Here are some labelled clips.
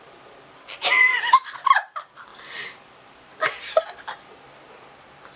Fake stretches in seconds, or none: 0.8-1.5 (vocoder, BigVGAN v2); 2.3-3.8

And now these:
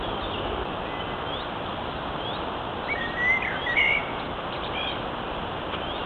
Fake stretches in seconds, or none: none

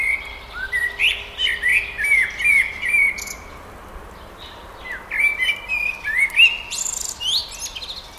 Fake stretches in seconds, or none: 0.0-1.7 (vocoder, BigVGAN v2); 2.5-7.4

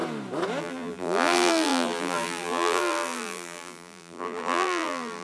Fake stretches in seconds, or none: 0.6-5.2 (vocoder, BigVGAN v2)